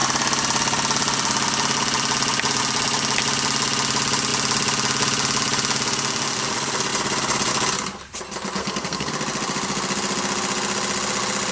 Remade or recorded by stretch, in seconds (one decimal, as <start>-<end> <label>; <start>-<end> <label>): 0.0-8.6 recorded; 8.6-9.1 remade; 9.1-11.5 recorded